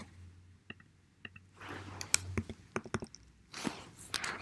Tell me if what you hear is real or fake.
real